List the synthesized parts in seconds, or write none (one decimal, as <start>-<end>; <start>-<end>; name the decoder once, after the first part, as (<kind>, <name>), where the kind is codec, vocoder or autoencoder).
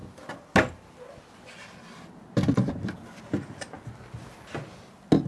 none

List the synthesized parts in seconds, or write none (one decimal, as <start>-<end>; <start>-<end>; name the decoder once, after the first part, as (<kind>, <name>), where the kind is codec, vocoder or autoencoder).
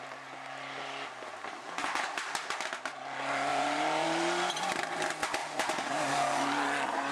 3.5-4.5 (vocoder, BigVGAN v2); 5.4-6.5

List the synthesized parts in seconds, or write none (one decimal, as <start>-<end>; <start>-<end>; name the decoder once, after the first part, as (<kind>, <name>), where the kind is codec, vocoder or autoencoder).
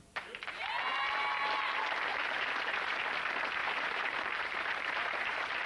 2.1-3.0 (vocoder, BigVGAN v2); 3.6-5.7